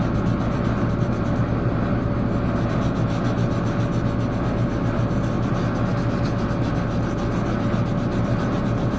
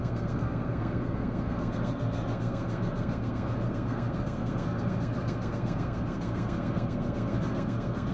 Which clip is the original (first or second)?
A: first